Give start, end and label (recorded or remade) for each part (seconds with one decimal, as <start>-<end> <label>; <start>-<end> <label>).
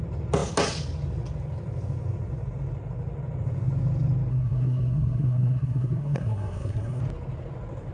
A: 0.0-4.3 recorded; 4.3-7.0 remade; 7.0-7.9 recorded